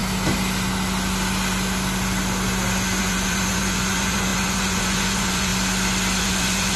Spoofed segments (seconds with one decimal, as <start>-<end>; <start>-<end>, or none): 3.0-5.5; 6.2-6.8